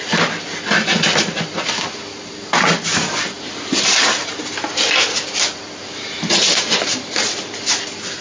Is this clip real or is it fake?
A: real